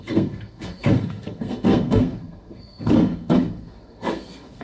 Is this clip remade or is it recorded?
remade